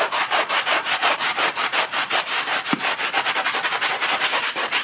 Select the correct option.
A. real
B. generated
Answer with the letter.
B